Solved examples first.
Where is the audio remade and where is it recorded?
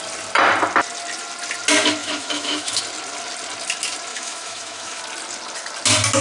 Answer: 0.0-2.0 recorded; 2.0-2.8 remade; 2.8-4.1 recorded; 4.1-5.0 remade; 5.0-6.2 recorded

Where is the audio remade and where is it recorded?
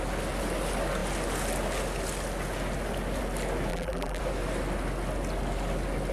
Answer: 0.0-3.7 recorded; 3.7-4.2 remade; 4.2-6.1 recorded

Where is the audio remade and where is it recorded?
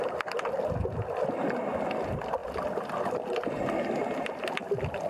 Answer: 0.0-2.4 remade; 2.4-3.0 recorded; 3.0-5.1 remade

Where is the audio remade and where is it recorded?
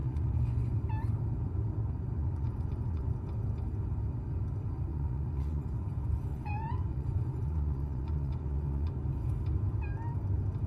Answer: 0.0-0.8 remade; 0.8-2.2 recorded; 2.2-3.1 remade; 3.1-4.9 recorded; 4.9-5.7 remade; 5.7-6.3 recorded; 6.3-8.9 remade; 8.9-10.7 recorded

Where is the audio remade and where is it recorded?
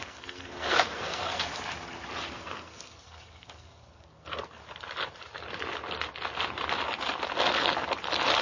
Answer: 0.0-1.5 remade; 1.5-2.3 recorded; 2.3-4.6 remade; 4.6-8.4 recorded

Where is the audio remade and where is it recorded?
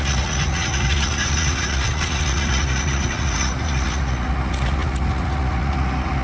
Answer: 0.0-6.2 remade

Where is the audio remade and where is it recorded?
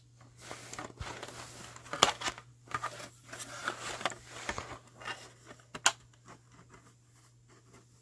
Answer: 0.0-8.0 recorded